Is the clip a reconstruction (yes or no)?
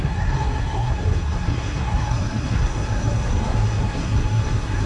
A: yes